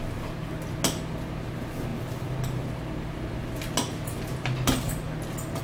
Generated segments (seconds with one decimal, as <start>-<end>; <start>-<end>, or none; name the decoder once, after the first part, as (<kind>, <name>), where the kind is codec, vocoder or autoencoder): none